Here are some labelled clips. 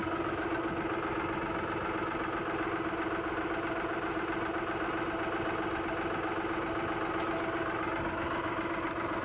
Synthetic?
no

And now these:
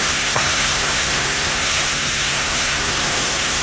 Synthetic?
yes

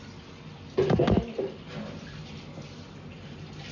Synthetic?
no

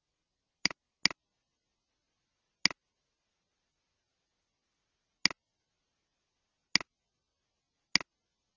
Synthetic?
no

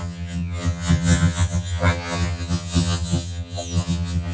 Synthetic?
yes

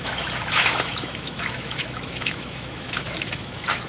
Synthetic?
yes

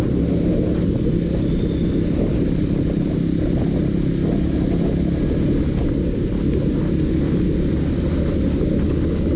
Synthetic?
no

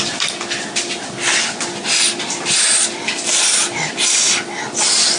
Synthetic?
no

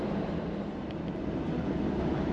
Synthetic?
no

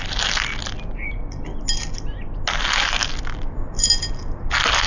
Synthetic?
no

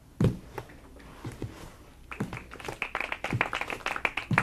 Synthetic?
no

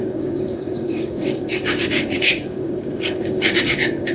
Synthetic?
yes